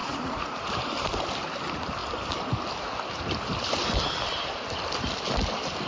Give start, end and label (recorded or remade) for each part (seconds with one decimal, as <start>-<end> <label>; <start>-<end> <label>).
0.0-0.7 remade; 0.7-5.9 recorded